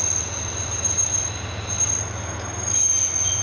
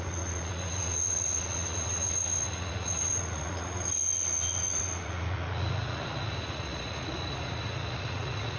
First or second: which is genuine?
first